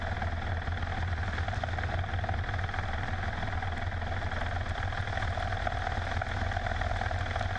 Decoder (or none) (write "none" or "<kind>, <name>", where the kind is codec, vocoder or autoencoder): none